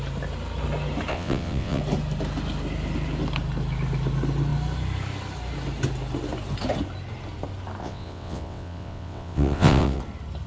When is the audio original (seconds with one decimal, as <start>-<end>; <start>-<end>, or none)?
0.0-1.1; 1.8-7.8; 10.0-10.5